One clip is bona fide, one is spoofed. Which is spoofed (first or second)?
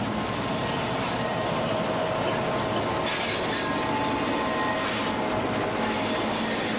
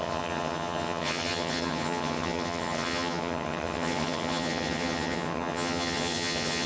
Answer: second